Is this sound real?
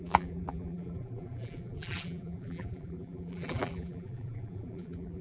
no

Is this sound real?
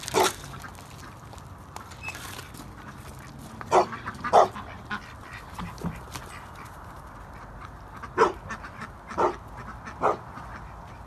yes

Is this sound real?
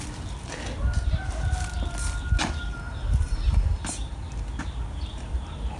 yes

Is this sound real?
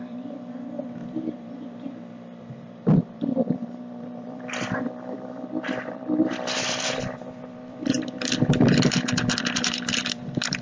no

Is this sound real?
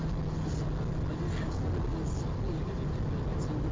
yes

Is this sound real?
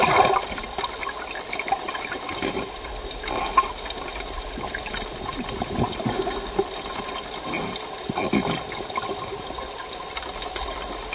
yes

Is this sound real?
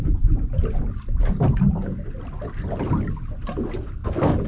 yes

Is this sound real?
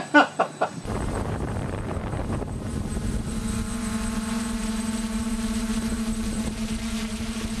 no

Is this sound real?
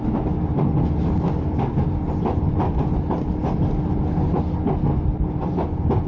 yes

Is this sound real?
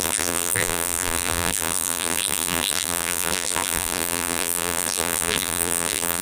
no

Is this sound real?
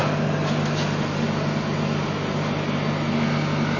yes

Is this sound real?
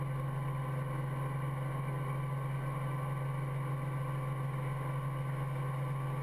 yes